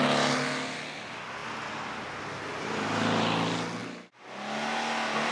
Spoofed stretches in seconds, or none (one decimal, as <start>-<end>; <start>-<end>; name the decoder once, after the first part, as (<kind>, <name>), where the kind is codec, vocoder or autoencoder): none